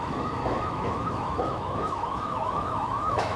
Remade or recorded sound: remade